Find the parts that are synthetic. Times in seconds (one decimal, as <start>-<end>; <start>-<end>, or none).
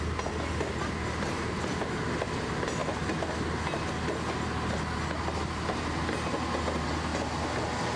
none